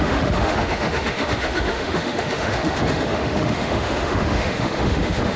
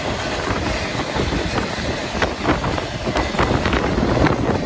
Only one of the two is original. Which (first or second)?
second